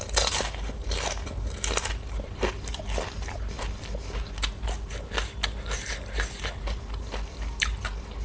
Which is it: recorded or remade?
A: recorded